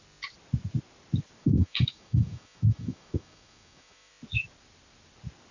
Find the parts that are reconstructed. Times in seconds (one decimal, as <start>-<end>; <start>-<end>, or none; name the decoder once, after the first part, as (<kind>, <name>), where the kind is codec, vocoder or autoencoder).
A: 1.4-4.1 (autoencoder, DAC-VAE)

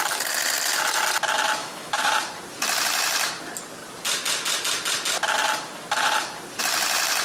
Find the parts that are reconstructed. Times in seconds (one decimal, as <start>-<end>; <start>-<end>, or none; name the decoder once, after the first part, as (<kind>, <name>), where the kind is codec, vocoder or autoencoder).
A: 1.6-2.1 (autoencoder, DAC-VAE)

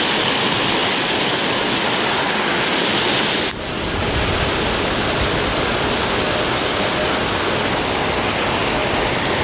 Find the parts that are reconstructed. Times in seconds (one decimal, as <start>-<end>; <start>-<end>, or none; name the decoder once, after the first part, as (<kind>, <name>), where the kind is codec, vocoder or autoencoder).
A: none

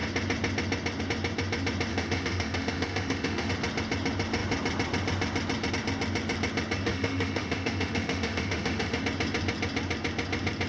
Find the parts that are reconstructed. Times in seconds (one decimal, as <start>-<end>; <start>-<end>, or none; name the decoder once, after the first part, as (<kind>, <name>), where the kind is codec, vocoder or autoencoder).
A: 1.9-3.5 (autoencoder, DAC-VAE); 6.9-9.0

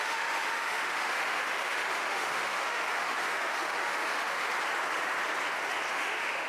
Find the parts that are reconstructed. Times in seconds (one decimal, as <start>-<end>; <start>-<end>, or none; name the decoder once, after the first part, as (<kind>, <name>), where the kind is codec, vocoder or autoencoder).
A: 0.0-4.5 (autoencoder, DAC-VAE); 5.9-6.5